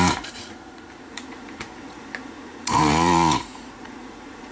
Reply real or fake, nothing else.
fake